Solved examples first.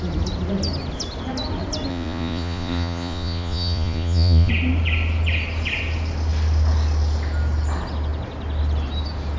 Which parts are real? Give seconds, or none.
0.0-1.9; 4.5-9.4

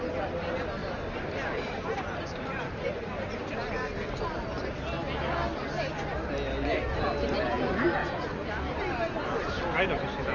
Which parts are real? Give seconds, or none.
0.0-0.8; 4.2-8.0; 8.6-10.3

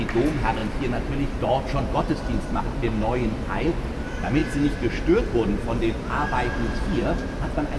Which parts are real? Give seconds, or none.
0.0-7.8

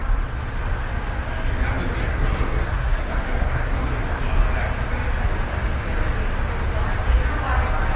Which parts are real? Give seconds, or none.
0.0-2.0; 4.0-8.0